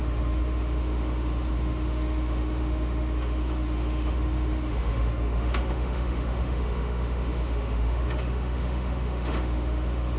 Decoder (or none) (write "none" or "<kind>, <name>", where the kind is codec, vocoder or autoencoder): autoencoder, DAC-VAE